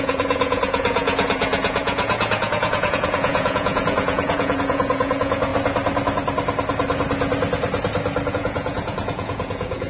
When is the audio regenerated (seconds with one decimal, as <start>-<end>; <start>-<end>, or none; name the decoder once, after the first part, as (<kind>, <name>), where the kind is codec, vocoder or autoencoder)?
0.0-5.5 (vocoder, Vocos); 8.3-9.9

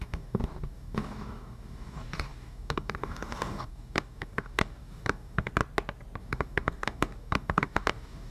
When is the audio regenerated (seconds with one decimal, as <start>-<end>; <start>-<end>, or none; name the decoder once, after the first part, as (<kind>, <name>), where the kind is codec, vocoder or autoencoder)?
0.0-5.5 (codec, DAC); 6.2-8.3